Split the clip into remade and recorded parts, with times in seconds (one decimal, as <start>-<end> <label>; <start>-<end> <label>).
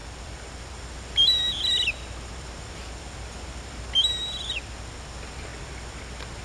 0.0-3.8 remade; 3.8-5.5 recorded; 5.5-6.0 remade; 6.0-6.4 recorded